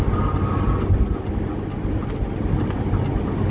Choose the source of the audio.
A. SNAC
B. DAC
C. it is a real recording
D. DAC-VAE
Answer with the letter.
C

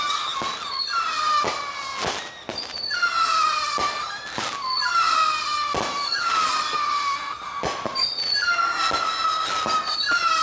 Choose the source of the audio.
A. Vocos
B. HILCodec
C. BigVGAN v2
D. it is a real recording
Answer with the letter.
D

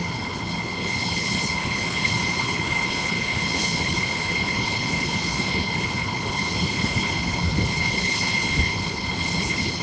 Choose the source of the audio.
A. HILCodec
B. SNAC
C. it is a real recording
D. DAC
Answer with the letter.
A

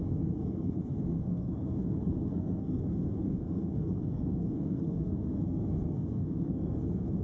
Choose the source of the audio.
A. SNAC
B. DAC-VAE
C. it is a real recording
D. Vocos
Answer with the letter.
A